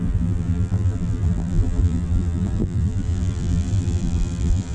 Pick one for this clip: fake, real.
fake